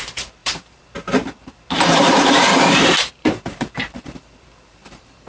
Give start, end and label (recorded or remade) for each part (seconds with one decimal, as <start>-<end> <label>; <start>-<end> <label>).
0.0-5.3 remade